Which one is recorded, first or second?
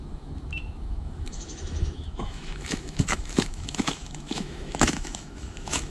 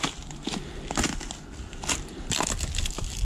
second